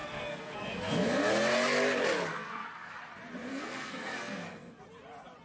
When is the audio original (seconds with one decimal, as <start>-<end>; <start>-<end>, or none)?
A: 1.2-2.3; 2.9-3.5; 4.8-5.4